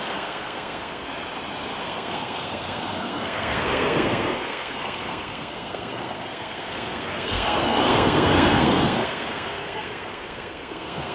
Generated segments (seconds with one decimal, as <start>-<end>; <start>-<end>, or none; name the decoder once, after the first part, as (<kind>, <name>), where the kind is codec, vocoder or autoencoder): 0.0-1.1 (codec, SNAC); 1.8-11.1